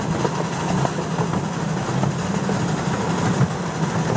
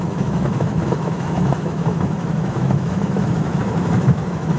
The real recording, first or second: first